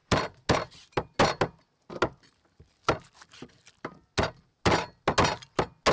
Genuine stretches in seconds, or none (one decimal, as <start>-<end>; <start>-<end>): 0.0-5.9